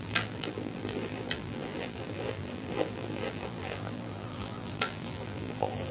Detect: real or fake fake